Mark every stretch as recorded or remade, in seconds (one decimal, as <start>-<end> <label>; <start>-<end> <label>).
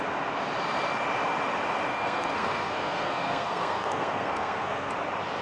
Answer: 0.0-1.9 recorded; 1.9-4.9 remade; 4.9-5.4 recorded